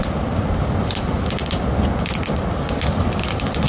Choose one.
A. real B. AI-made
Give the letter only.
A